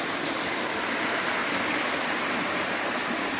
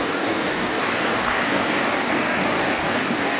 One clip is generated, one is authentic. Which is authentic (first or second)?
first